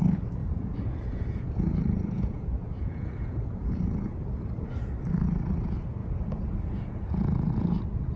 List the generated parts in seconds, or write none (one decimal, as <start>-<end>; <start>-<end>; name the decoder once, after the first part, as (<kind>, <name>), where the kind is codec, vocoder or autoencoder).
0.4-4.4 (vocoder, Vocos); 6.0-7.2